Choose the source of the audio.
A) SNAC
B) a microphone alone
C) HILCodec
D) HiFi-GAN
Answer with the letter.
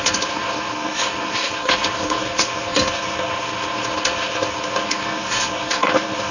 A